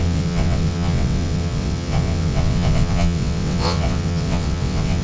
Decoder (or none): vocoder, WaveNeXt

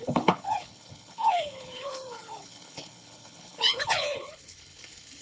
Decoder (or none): codec, HILCodec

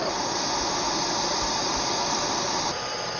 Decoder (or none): none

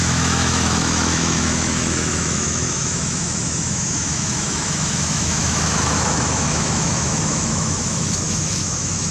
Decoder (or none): autoencoder, DAC-VAE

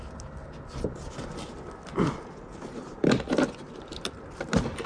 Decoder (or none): none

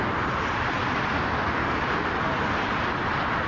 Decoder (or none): none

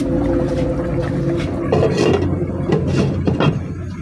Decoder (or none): none